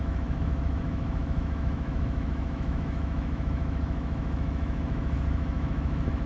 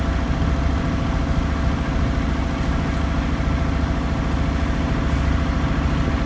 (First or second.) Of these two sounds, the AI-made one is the first